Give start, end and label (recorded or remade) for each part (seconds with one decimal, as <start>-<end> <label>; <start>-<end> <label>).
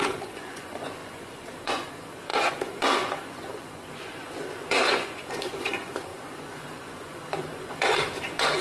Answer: 0.0-8.6 remade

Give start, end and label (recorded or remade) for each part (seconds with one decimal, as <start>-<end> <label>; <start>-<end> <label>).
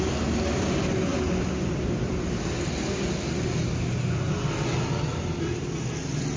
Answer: 0.0-6.4 recorded